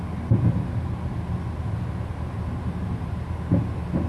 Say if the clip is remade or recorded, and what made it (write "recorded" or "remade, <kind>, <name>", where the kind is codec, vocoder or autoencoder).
recorded